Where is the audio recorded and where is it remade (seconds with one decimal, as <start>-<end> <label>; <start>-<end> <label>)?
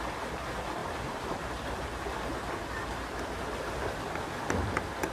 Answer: 0.0-0.8 recorded; 0.8-2.5 remade; 2.5-5.1 recorded